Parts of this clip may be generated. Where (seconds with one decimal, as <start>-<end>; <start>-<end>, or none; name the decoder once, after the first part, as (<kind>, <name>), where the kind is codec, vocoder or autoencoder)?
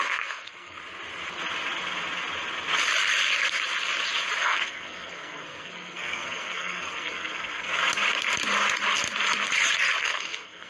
0.0-0.8 (codec, SNAC); 4.4-7.8; 10.0-10.7